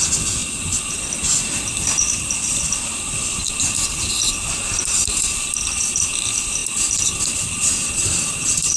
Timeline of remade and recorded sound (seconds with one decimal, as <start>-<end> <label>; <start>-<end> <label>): 0.0-8.8 recorded